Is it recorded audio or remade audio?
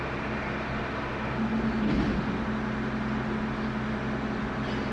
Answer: recorded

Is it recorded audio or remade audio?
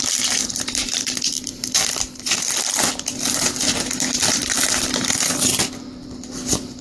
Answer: remade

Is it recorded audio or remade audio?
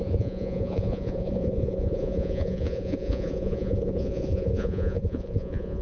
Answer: remade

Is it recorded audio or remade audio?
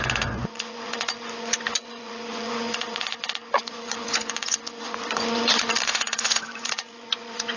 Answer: remade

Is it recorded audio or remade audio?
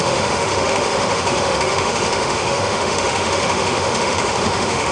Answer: remade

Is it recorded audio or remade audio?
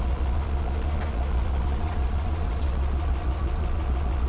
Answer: remade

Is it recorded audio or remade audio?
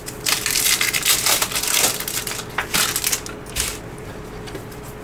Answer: recorded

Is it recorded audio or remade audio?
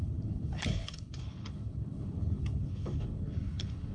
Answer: remade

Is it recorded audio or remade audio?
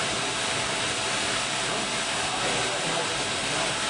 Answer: recorded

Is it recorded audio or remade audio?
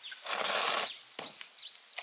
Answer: recorded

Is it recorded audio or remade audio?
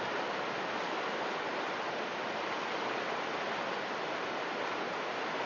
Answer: recorded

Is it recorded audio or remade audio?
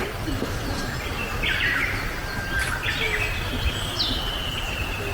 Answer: recorded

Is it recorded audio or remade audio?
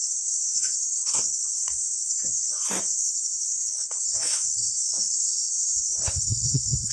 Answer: remade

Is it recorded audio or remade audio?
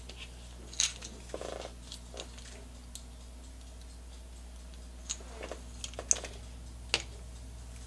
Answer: recorded